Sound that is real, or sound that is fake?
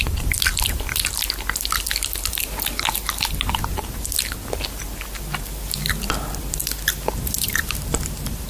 real